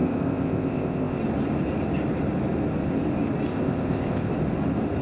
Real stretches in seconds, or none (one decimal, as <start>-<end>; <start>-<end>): 1.2-3.5; 4.3-5.0